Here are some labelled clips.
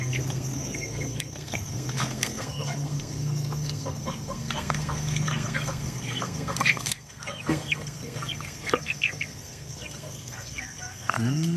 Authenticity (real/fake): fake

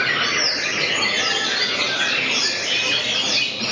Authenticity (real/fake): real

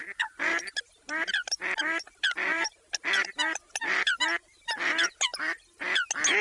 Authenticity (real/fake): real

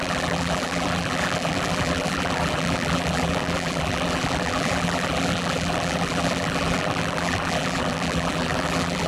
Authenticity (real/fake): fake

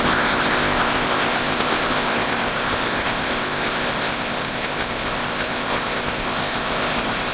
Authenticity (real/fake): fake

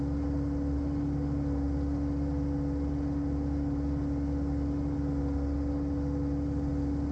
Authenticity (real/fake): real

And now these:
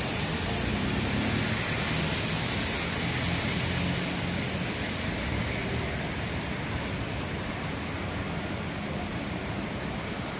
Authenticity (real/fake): real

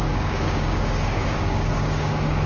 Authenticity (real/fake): fake